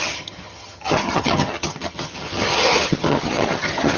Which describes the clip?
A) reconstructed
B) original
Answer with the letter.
A